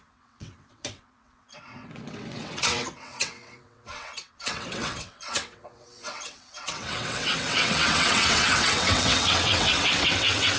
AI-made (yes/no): yes